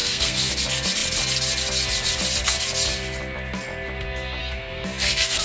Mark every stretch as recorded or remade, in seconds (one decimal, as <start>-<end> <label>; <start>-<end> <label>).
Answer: 0.0-0.5 remade; 0.5-4.4 recorded; 4.4-5.4 remade